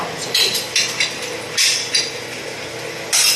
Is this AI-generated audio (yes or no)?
no